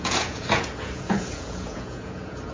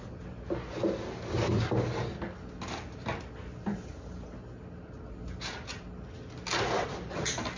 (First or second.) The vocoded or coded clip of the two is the first